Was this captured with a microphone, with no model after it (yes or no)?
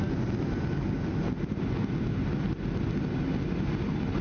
yes